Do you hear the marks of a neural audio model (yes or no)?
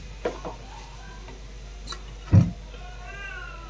no